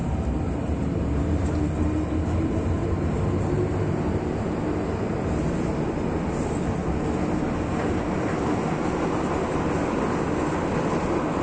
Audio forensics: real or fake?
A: real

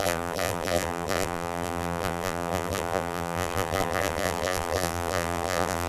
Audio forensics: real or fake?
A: fake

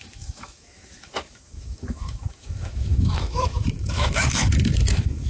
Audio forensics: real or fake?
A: fake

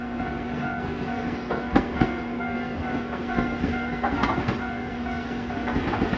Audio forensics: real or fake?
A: fake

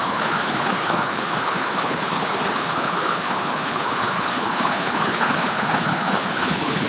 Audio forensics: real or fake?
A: fake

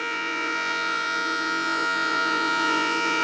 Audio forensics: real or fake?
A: fake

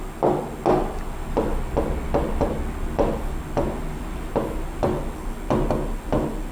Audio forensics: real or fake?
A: real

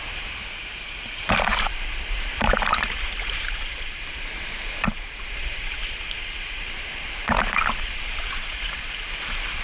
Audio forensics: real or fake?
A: fake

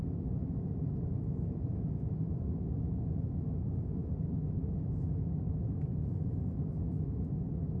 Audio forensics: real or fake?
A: fake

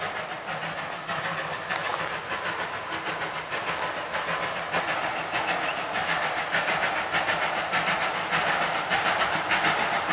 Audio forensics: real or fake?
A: real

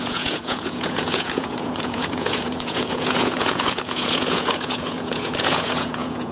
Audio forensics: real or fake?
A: fake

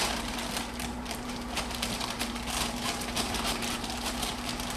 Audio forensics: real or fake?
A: fake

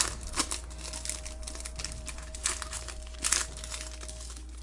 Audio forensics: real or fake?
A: real